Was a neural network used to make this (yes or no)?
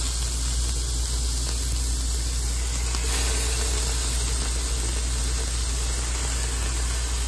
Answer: no